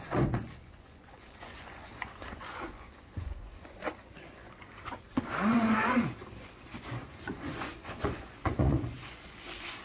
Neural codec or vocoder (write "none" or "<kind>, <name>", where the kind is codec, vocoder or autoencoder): vocoder, Vocos